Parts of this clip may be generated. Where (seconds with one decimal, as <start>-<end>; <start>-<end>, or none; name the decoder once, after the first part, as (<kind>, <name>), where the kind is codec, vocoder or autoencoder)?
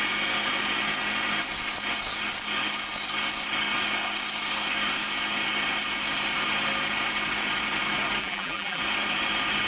8.2-8.8 (vocoder, BigVGAN v2)